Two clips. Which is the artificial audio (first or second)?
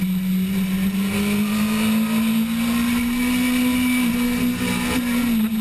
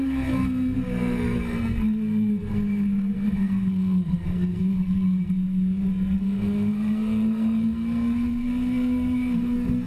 second